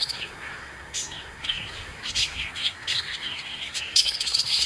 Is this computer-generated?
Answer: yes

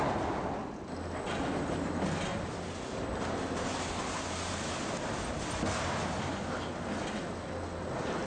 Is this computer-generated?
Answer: no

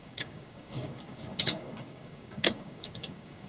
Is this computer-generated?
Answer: yes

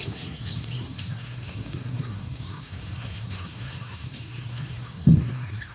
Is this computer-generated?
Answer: yes